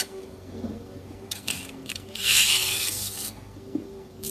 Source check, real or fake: fake